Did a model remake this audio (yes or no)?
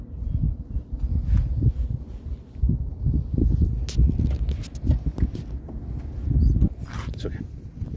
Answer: no